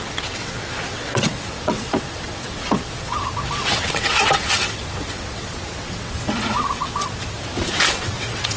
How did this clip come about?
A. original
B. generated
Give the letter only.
B